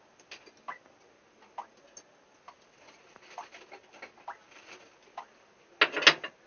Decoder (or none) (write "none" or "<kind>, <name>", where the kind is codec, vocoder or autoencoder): none